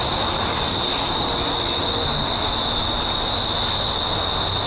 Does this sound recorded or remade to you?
recorded